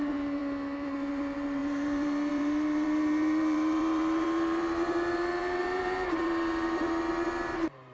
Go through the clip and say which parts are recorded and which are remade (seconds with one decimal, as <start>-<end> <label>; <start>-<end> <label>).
0.0-0.4 remade; 0.4-1.1 recorded; 1.1-7.9 remade